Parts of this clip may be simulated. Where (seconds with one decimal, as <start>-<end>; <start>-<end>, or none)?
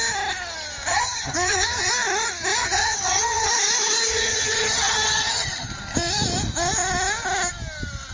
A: 0.9-1.9; 2.6-3.5; 4.1-5.7